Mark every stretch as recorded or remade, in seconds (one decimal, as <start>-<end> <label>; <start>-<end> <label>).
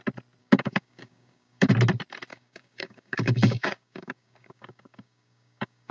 0.0-0.4 recorded; 0.4-1.7 remade; 1.7-2.3 recorded; 2.3-5.9 remade